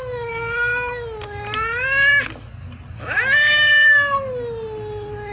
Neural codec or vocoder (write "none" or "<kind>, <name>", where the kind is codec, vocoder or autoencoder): none